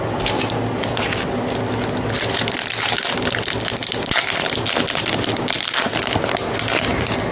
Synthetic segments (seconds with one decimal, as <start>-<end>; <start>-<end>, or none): none